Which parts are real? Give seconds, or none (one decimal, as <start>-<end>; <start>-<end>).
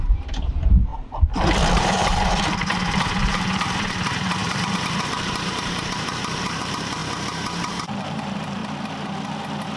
0.9-1.8; 8.6-9.8